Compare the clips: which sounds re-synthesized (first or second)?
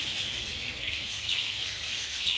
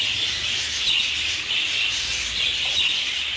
first